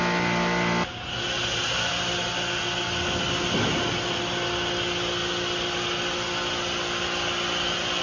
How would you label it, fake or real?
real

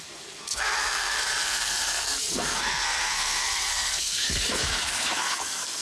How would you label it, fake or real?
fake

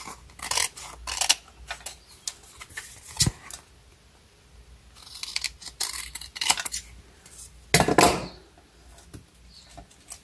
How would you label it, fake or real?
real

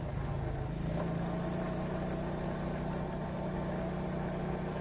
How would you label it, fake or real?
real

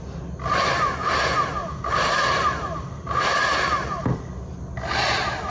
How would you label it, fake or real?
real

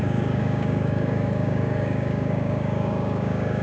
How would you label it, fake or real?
fake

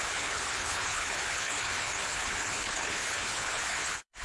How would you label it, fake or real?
fake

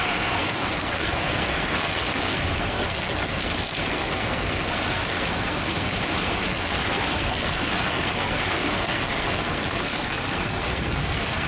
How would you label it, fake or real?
fake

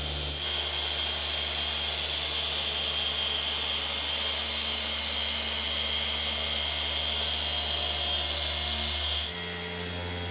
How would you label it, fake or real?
real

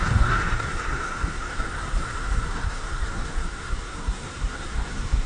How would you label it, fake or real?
fake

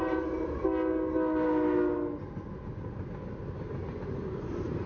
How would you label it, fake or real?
real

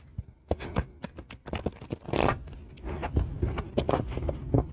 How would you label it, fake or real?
real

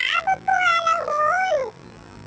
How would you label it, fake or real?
fake